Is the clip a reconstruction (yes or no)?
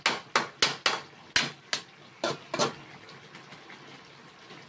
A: no